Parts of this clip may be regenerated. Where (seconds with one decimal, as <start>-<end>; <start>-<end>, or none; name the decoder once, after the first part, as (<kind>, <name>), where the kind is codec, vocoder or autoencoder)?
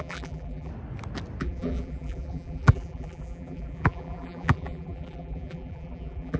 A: 0.0-0.7 (vocoder, BigVGAN v2); 1.4-6.4